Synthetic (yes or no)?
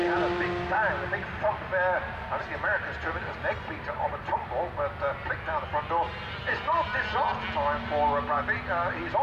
no